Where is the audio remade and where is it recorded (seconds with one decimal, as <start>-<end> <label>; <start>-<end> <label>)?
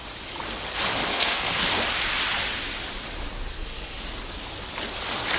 0.0-1.1 recorded; 1.1-1.6 remade; 1.6-3.5 recorded; 3.5-4.0 remade; 4.0-5.4 recorded